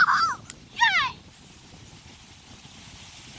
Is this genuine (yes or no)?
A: yes